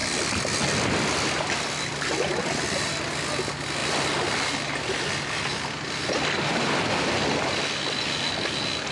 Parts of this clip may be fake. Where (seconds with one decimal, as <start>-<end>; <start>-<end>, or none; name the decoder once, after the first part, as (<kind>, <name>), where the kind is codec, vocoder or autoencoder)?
none